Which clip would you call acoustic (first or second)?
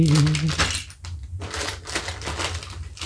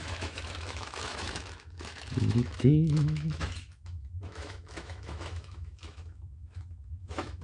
first